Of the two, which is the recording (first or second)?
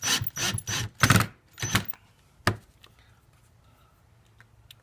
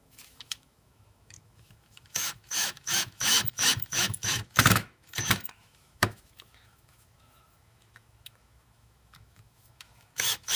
first